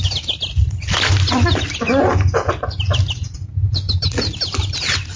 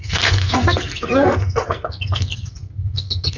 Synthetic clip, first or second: second